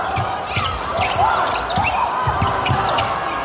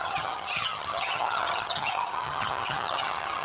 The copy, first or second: second